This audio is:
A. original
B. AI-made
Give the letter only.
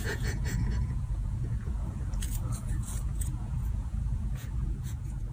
B